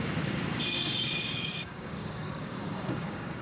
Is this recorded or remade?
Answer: remade